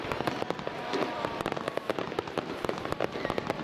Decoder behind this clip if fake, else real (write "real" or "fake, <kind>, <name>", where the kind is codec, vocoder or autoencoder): real